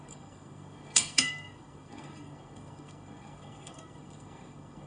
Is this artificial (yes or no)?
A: yes